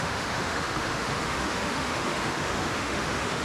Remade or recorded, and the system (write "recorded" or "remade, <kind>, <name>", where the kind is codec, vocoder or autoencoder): remade, autoencoder, DAC-VAE